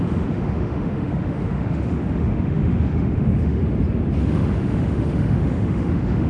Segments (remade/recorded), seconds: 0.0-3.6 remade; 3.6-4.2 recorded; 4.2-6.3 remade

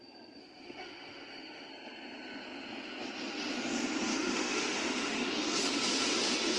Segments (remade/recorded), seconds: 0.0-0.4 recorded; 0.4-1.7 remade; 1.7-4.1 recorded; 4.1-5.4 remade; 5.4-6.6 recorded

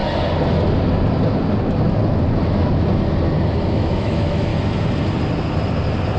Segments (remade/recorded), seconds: 0.0-3.7 recorded; 3.7-4.5 remade; 4.5-6.2 recorded

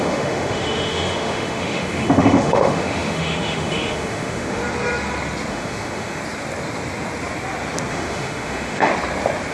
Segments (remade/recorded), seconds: 0.0-4.6 remade; 4.6-5.5 recorded; 5.5-6.2 remade; 6.2-7.9 recorded; 7.9-8.9 remade; 8.9-9.5 recorded

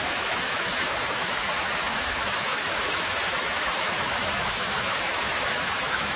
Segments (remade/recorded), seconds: 0.0-6.2 remade

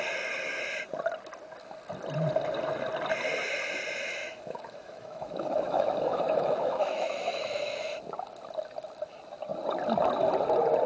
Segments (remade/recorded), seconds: 0.0-4.2 recorded; 4.2-8.0 remade; 8.0-10.9 recorded